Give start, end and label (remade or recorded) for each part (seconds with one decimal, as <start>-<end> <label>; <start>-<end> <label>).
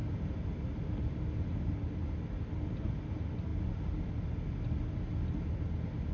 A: 0.0-6.1 recorded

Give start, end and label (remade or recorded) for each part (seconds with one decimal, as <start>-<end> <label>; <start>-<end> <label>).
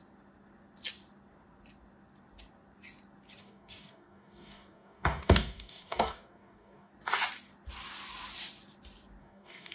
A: 0.0-3.4 recorded; 3.4-6.9 remade; 6.9-9.2 recorded; 9.2-9.7 remade